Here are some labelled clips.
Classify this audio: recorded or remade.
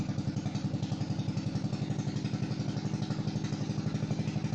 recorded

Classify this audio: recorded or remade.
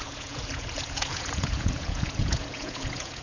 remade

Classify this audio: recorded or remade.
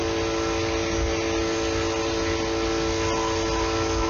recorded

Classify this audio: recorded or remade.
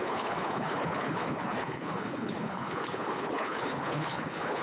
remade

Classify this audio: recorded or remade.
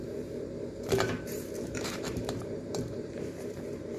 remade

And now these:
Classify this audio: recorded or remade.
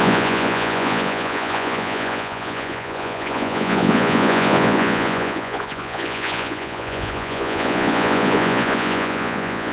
remade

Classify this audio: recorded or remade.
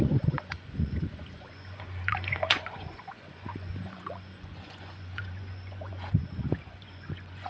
remade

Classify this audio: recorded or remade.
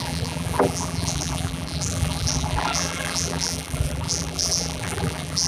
remade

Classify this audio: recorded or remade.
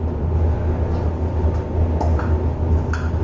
recorded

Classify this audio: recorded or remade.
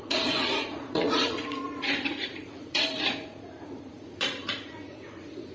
remade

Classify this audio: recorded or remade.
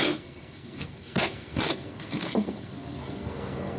remade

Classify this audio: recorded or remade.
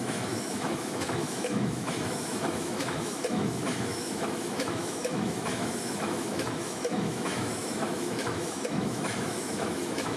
remade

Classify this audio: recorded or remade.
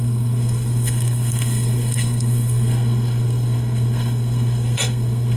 remade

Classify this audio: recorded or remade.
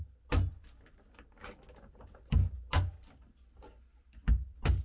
recorded